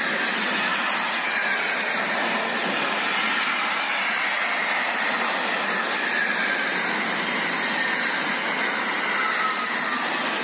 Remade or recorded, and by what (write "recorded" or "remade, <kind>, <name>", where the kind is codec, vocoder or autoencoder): recorded